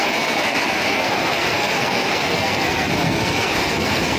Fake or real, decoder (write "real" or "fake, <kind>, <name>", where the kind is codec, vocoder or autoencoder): fake, codec, SNAC